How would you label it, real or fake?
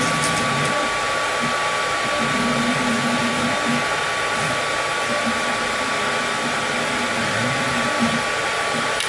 real